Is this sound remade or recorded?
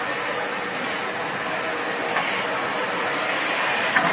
recorded